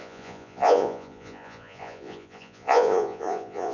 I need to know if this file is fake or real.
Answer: fake